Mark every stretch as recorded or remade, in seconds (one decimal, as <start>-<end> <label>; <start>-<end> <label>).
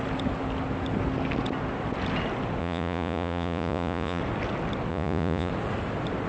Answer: 0.0-2.6 recorded; 2.6-4.2 remade; 4.2-4.9 recorded; 4.9-5.5 remade; 5.5-6.3 recorded